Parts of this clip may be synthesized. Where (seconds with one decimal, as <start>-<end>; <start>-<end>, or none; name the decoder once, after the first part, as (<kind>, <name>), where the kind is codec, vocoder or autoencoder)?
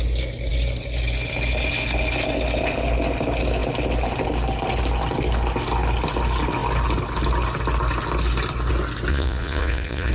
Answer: 9.1-10.1 (vocoder, Vocos)